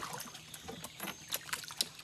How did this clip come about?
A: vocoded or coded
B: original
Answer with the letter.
B